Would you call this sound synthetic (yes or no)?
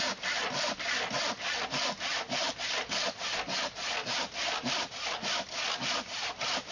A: no